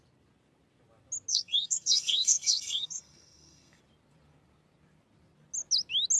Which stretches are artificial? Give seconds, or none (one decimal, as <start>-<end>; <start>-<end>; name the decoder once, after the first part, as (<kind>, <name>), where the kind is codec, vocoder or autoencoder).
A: 1.3-3.8 (codec, SNAC)